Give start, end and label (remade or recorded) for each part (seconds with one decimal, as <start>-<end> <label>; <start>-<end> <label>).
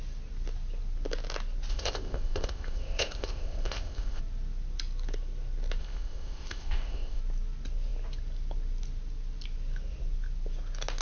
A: 0.0-1.7 recorded; 1.7-4.2 remade; 4.2-5.8 recorded; 5.8-7.2 remade; 7.2-11.0 recorded